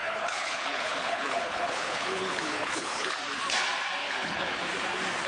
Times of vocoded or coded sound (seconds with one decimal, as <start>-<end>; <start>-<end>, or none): 0.0-3.2; 4.0-4.6